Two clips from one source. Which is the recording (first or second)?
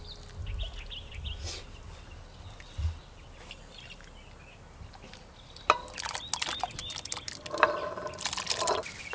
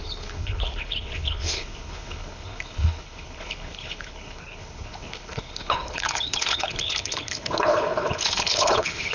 first